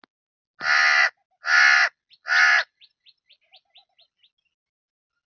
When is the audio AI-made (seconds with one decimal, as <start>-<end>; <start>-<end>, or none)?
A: none